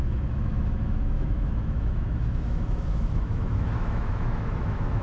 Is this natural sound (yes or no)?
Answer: no